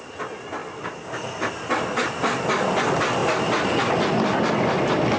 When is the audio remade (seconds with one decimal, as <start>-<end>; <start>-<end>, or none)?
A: none